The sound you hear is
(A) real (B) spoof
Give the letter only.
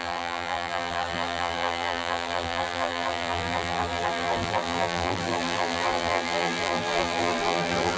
B